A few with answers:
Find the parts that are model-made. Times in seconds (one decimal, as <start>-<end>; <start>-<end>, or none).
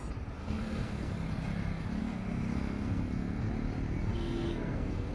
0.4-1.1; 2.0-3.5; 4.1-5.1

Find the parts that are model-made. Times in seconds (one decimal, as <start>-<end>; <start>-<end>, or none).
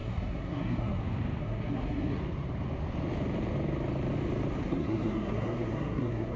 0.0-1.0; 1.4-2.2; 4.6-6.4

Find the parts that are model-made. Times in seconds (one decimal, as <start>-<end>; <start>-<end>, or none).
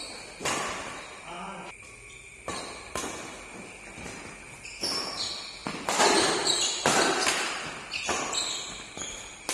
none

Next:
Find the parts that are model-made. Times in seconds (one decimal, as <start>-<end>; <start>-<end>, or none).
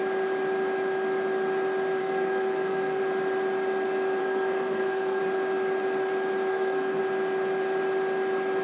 2.0-3.0; 4.2-5.2; 6.5-7.0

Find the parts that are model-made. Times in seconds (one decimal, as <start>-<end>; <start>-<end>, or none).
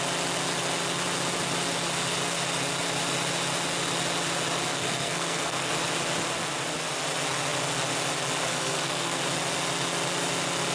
4.7-5.7; 8.5-9.2